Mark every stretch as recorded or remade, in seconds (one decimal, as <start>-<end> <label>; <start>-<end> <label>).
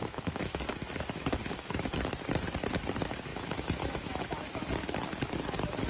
0.0-2.1 remade; 2.1-3.3 recorded; 3.3-4.7 remade; 4.7-5.9 recorded